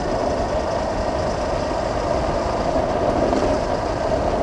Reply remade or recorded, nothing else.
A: recorded